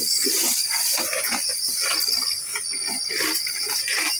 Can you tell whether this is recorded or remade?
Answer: recorded